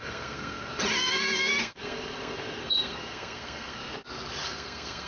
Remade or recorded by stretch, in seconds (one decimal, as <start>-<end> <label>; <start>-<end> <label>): 0.0-0.7 remade; 0.7-1.6 recorded; 1.6-3.8 remade; 3.8-4.4 recorded; 4.4-5.1 remade